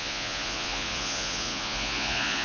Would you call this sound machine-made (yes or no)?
yes